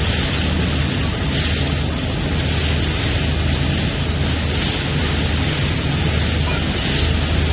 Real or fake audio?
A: real